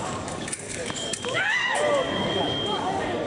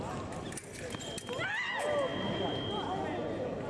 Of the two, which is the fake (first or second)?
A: first